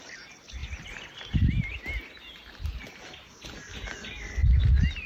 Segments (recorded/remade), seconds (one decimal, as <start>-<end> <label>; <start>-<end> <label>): 0.0-5.1 recorded